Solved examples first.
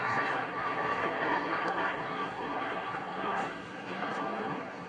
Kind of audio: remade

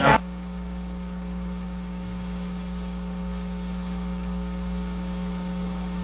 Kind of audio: remade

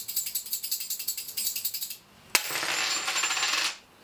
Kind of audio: recorded